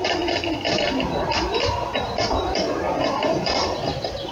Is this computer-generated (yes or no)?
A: yes